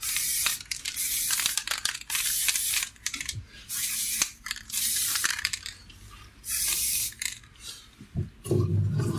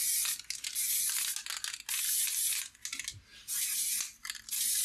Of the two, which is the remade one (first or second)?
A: first